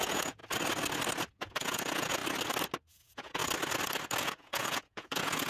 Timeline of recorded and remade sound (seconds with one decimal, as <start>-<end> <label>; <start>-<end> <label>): 0.0-0.4 remade; 0.4-1.3 recorded; 1.3-2.2 remade; 2.2-2.9 recorded; 2.9-3.4 remade; 3.4-4.2 recorded; 4.2-5.5 remade